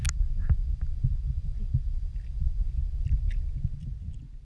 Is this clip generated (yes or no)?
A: no